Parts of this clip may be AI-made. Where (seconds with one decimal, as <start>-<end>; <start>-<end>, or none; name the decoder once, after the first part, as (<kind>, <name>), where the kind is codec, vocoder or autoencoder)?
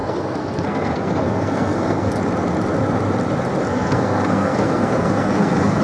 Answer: 0.0-2.1 (codec, SNAC); 3.7-5.8